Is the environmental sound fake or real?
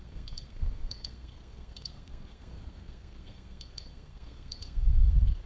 fake